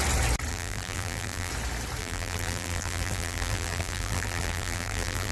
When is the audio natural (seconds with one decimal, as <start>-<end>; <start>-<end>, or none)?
0.0-0.5; 1.5-2.0

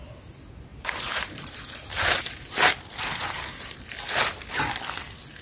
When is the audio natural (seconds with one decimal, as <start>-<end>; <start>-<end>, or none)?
0.0-0.7; 3.9-5.4

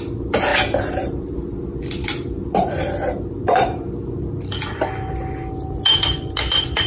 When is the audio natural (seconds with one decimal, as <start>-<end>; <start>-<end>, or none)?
0.0-0.5; 3.9-6.9